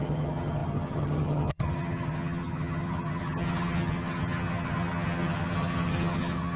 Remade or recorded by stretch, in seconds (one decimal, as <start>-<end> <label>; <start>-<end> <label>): 0.0-6.6 remade